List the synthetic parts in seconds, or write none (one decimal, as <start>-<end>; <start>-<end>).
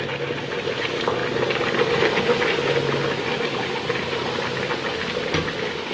none